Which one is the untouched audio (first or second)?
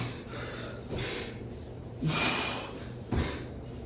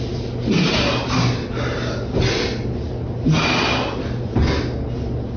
second